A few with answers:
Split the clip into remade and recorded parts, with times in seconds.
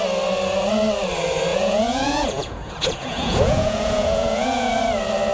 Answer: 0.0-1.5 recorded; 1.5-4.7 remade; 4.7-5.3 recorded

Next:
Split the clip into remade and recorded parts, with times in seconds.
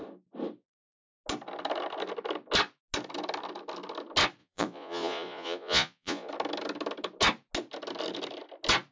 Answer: 0.0-4.4 recorded; 4.4-6.3 remade; 6.3-8.9 recorded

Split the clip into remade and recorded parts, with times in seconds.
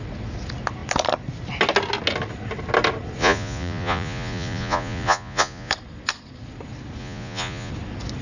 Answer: 0.0-3.2 recorded; 3.2-5.7 remade; 5.7-7.0 recorded; 7.0-7.7 remade; 7.7-8.2 recorded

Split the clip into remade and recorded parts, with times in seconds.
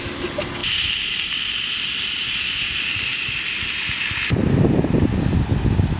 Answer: 0.0-6.0 recorded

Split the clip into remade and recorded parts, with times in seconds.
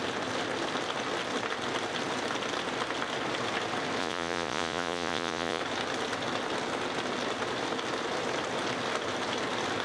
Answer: 0.0-4.0 recorded; 4.0-5.6 remade; 5.6-9.8 recorded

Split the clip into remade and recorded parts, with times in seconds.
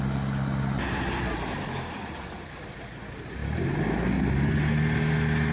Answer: 0.0-5.5 recorded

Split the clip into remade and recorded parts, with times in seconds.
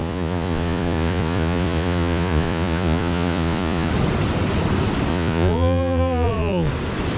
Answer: 0.0-3.9 remade; 3.9-5.1 recorded; 5.1-6.7 remade; 6.7-7.2 recorded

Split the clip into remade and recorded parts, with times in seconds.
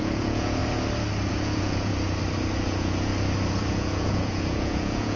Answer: 0.0-0.6 remade; 0.6-1.3 recorded; 1.3-1.9 remade; 1.9-2.6 recorded; 2.6-3.1 remade; 3.1-3.6 recorded; 3.6-5.2 remade